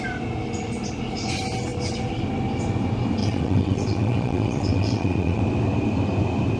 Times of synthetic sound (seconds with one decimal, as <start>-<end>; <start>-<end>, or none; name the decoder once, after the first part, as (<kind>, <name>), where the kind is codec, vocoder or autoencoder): 3.2-5.4 (vocoder, WaveNeXt)